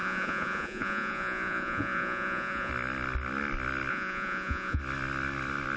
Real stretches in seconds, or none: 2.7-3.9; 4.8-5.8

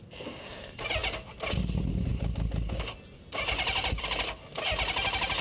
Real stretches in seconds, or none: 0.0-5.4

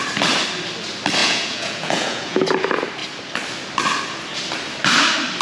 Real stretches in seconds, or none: 0.0-1.2; 2.4-5.4